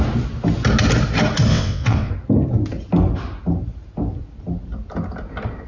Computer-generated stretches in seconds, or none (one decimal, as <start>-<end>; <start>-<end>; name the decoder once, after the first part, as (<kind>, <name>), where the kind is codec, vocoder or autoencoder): 1.5-2.1 (vocoder, WaveNeXt)